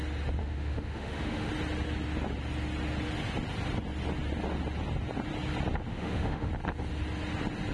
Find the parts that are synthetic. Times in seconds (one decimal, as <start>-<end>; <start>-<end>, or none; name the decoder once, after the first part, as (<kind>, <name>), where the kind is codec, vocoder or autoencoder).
0.4-1.5 (autoencoder, DAC-VAE); 5.9-6.5